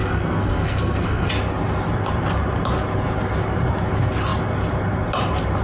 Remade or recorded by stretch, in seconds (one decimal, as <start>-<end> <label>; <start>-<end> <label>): 0.0-1.3 remade; 1.3-5.6 recorded